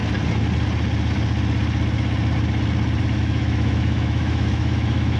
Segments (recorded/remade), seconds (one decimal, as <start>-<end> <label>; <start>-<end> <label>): 0.0-3.0 recorded; 3.0-5.2 remade